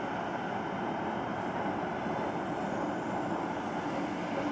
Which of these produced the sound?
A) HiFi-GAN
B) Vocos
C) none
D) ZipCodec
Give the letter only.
C